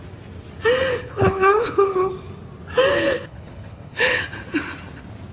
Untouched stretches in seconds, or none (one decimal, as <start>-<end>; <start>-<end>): 0.0-0.9; 2.1-2.9; 4.2-5.3